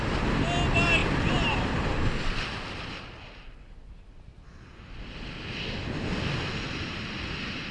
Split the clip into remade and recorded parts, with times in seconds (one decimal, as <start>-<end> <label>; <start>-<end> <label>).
0.0-7.7 recorded